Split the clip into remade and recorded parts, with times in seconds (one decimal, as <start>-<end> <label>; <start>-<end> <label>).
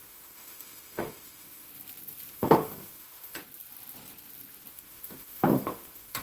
0.0-1.7 remade; 1.7-2.3 recorded; 2.3-3.4 remade; 3.4-4.7 recorded; 4.7-6.2 remade